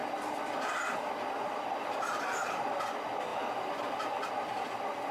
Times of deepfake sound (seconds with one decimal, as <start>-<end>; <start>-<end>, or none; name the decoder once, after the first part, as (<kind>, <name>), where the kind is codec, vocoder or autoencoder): none